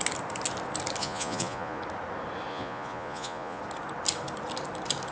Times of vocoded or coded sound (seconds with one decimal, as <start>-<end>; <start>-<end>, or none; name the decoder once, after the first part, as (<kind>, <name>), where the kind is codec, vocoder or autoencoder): 1.0-1.8 (vocoder, Vocos); 2.5-3.6